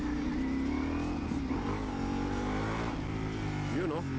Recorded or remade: recorded